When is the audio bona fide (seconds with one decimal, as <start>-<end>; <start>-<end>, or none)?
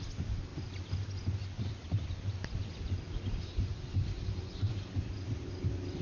0.0-6.0